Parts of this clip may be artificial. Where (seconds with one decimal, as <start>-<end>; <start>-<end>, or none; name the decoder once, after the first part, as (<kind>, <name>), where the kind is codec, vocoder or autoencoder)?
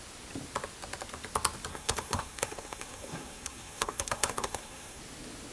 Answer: 1.7-5.0 (codec, SNAC)